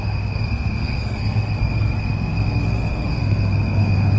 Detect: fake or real fake